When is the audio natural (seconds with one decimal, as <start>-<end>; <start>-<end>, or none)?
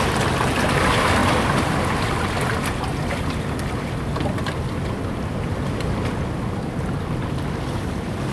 0.0-8.3